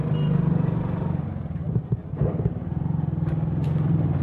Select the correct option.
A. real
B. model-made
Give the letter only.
A